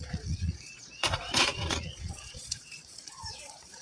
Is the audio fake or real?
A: fake